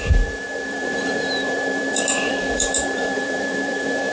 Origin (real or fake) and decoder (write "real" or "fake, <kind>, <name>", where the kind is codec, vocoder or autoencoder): fake, vocoder, BigVGAN v2